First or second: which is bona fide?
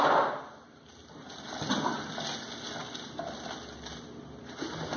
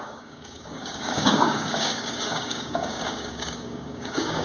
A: first